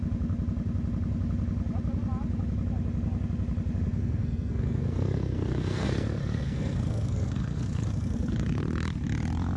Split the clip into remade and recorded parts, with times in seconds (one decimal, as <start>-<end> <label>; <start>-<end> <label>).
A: 0.0-3.9 recorded; 3.9-8.6 remade; 8.6-9.6 recorded